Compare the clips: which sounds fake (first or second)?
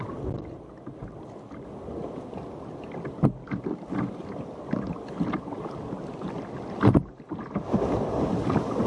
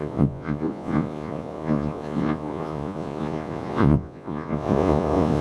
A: second